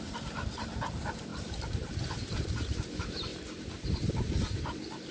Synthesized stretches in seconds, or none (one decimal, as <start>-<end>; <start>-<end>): 0.0-3.3; 4.5-5.1